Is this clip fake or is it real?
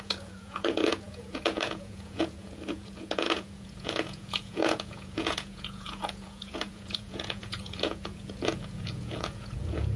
fake